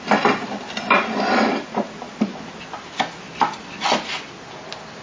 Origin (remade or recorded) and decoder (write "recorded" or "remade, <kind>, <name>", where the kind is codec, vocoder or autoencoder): recorded